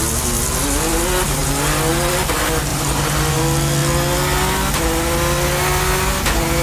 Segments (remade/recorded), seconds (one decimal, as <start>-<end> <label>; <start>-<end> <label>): 0.0-2.7 recorded; 2.7-3.4 remade; 3.4-6.6 recorded